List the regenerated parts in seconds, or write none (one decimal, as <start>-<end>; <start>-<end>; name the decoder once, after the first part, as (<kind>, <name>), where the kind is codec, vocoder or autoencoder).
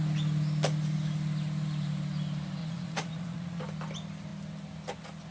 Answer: 2.6-3.6 (vocoder, Vocos)